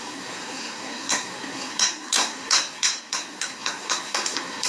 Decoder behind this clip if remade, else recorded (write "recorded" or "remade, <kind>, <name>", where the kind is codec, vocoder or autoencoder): remade, codec, SNAC